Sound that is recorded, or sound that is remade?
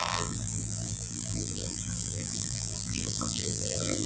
remade